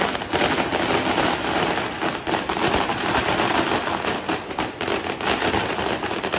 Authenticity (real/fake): fake